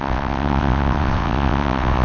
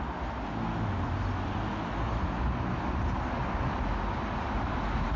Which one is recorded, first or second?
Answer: second